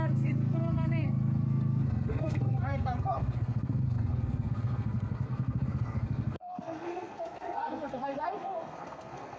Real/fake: fake